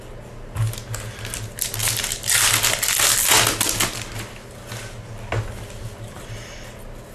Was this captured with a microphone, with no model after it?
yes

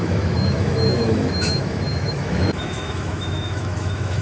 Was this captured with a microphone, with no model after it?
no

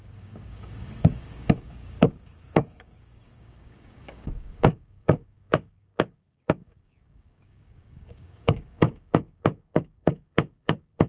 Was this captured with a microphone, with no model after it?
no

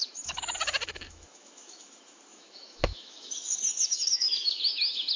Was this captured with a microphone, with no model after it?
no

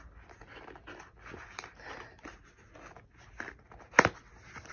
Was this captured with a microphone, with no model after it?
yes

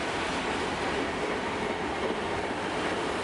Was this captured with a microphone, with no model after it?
yes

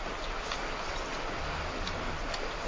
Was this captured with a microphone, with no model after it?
yes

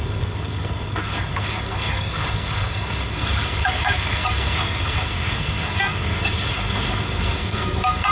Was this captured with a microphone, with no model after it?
no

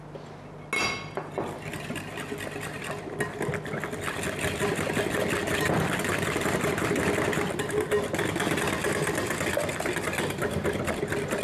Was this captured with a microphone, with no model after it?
yes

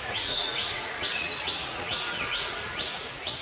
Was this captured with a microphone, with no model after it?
no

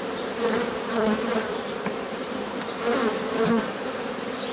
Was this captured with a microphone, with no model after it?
no